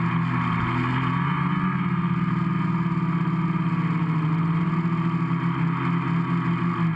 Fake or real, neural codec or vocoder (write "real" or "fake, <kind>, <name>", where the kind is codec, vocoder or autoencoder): real